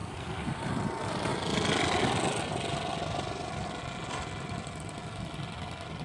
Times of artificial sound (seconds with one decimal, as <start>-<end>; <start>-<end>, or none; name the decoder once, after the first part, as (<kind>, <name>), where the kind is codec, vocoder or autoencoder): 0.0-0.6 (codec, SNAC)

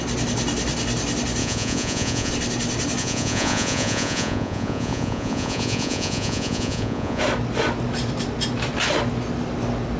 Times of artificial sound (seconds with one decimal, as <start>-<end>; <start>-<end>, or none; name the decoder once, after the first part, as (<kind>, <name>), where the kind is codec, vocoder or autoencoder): 1.4-2.3 (vocoder, Vocos); 3.0-7.2

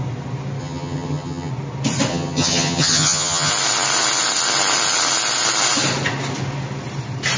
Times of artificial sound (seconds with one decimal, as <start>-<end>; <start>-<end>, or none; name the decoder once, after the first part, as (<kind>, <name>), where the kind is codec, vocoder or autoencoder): 0.6-1.5 (vocoder, HiFi-GAN); 2.1-3.5

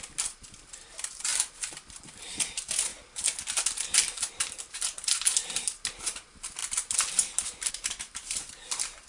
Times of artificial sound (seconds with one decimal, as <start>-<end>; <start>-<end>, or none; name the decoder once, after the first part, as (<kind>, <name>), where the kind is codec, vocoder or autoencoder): 0.0-2.9 (vocoder, BigVGAN v2); 4.3-9.1

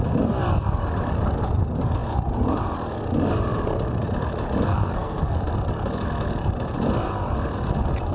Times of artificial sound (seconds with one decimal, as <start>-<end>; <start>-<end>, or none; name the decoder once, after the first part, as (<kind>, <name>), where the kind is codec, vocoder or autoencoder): 4.7-5.4 (codec, SNAC)